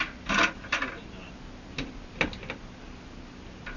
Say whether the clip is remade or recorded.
recorded